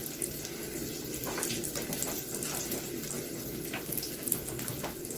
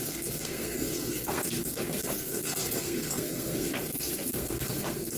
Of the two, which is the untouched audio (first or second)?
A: first